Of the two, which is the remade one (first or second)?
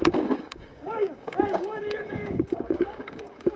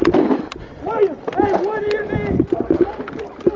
first